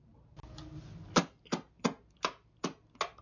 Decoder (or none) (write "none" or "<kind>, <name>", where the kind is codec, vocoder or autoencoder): none